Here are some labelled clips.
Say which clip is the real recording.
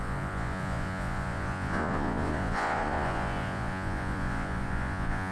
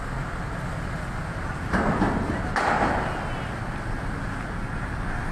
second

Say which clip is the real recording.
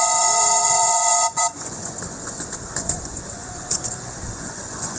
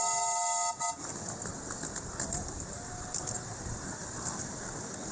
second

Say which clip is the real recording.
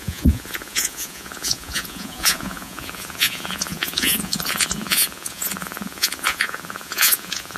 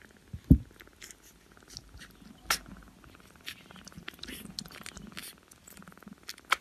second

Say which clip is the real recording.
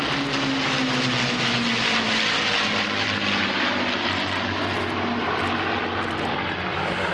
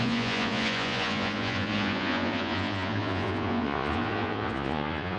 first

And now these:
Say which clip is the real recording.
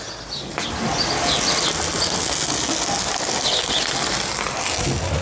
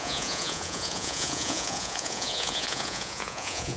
first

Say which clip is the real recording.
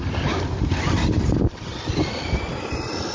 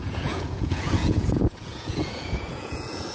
first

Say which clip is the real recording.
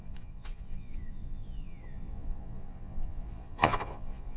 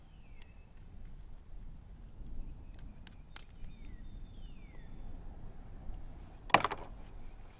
second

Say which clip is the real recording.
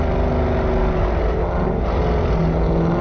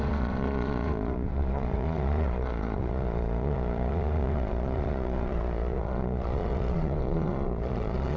first